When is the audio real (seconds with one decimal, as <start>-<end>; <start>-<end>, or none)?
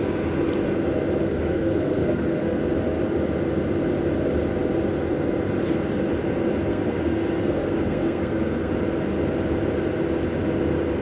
0.0-1.2; 2.6-6.7; 8.7-11.0